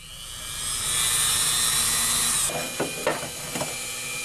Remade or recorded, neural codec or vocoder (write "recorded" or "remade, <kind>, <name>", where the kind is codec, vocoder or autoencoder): recorded